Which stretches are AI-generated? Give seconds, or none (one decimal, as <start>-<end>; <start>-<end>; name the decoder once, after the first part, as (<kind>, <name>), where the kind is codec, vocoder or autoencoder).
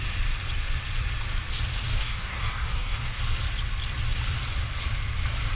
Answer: 2.0-3.2 (codec, DAC)